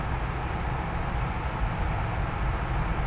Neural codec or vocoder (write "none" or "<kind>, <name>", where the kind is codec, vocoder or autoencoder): none